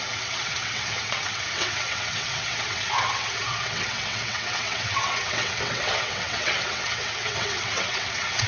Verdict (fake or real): fake